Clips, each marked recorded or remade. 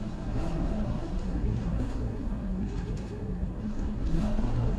remade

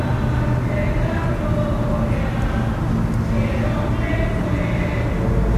recorded